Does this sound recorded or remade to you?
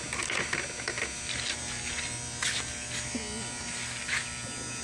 recorded